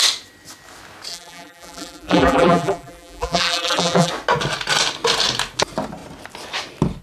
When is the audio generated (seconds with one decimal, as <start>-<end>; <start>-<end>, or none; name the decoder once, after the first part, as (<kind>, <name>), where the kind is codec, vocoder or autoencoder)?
1.1-4.1 (vocoder, BigVGAN v2)